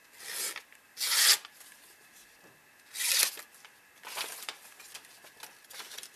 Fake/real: real